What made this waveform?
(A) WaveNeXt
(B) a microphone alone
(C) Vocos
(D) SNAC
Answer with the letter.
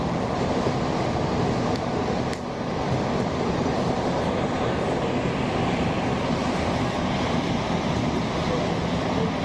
B